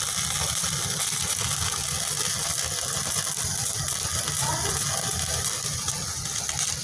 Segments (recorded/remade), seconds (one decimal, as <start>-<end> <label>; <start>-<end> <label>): 0.0-6.8 recorded